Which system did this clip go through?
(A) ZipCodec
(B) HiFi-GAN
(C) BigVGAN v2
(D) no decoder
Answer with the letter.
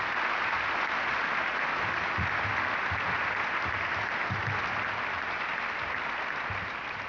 D